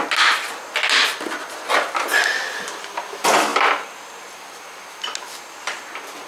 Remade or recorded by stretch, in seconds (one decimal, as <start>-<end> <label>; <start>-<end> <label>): 0.0-6.3 recorded